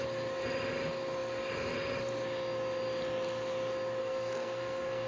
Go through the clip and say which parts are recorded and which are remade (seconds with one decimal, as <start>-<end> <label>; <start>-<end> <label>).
0.0-4.0 recorded; 4.0-5.1 remade